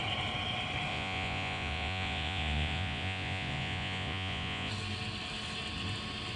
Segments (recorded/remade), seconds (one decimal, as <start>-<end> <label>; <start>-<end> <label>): 0.0-0.9 recorded; 0.9-4.7 remade; 4.7-6.4 recorded